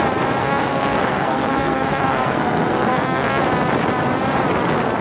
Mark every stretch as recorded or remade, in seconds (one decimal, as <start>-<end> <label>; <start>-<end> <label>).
0.0-0.4 recorded; 0.4-3.4 remade; 3.4-5.0 recorded